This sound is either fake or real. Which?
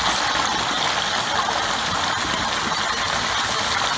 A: real